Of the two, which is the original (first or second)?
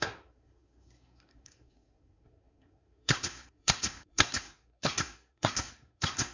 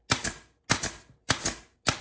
second